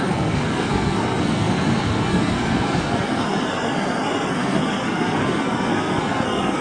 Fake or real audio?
fake